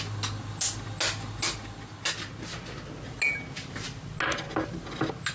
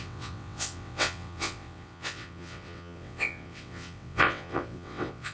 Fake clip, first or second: second